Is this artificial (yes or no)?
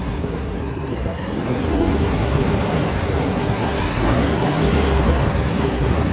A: yes